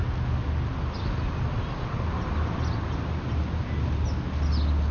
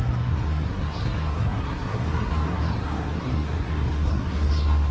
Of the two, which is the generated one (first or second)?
second